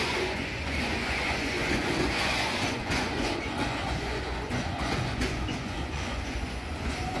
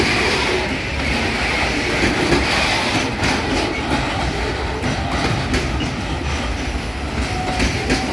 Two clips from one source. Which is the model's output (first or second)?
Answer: first